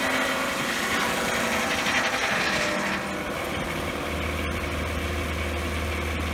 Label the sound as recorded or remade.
recorded